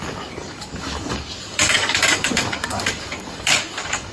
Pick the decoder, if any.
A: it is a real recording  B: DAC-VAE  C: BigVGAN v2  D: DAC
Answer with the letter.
D